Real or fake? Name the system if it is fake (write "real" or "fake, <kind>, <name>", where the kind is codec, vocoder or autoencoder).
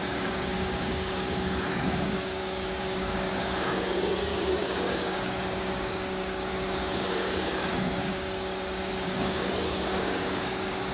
fake, codec, DAC